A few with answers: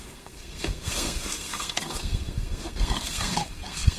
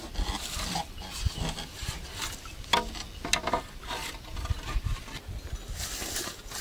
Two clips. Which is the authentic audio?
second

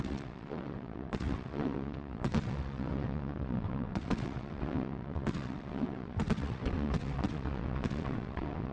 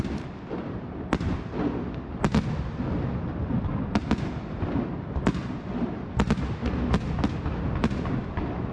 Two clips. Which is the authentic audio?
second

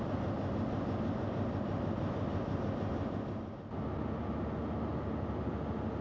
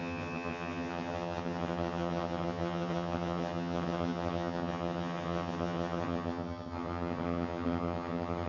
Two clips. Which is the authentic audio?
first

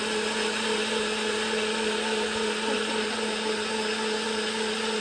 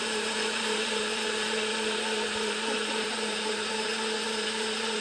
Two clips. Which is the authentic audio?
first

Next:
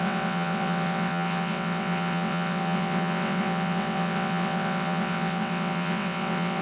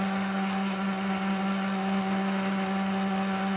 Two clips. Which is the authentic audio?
second